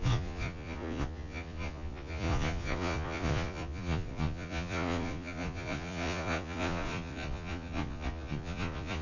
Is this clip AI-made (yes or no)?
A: yes